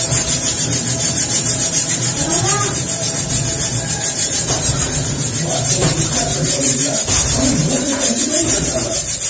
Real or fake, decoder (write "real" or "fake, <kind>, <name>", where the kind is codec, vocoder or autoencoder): fake, vocoder, BigVGAN v2